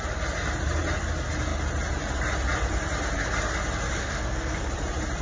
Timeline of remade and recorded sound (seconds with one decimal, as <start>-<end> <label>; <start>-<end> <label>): 0.0-4.0 recorded; 4.0-4.7 remade; 4.7-5.2 recorded